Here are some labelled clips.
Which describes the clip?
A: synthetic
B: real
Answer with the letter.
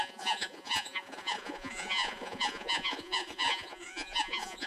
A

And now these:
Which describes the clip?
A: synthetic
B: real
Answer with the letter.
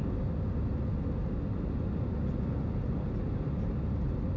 B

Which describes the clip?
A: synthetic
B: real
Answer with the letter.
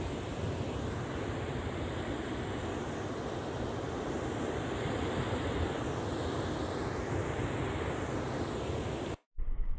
B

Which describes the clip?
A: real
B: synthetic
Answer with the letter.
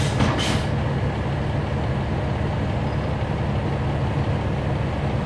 A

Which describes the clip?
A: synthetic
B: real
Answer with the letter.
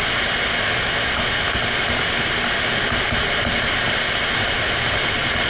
B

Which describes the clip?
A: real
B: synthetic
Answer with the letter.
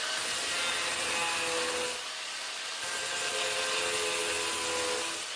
A